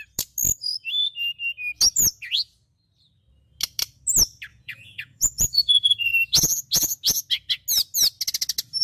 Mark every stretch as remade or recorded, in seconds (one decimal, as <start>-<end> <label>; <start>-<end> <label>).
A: 0.0-4.5 recorded; 4.5-6.1 remade; 6.1-8.8 recorded